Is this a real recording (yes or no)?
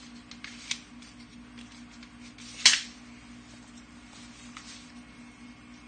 yes